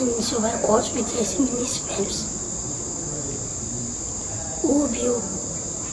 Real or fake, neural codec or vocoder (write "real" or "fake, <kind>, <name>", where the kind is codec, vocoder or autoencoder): fake, vocoder, BigVGAN v2